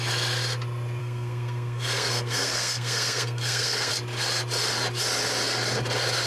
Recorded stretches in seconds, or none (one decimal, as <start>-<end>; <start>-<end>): 0.0-1.0; 3.9-6.3